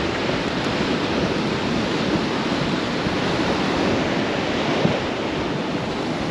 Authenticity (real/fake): real